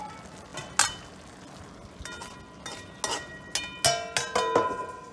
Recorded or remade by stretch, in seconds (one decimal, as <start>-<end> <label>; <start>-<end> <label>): 0.0-5.1 recorded